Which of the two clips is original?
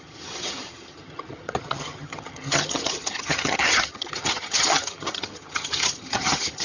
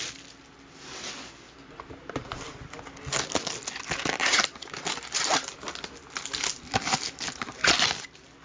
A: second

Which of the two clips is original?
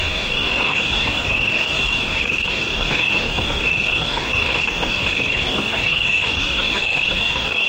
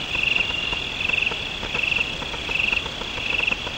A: second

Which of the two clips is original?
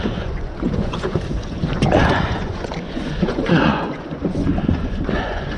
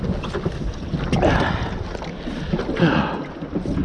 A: second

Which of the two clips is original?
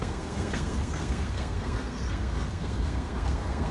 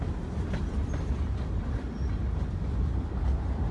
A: second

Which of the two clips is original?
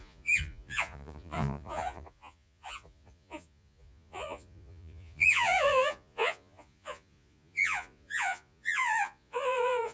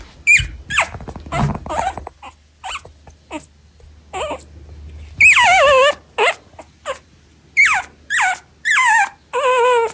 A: second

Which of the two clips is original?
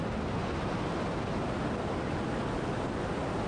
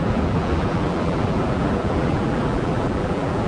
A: first